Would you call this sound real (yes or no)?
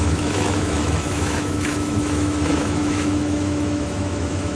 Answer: no